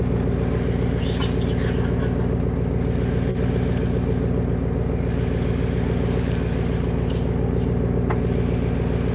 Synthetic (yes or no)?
no